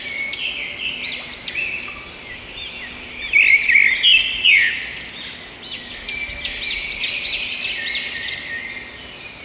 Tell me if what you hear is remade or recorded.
recorded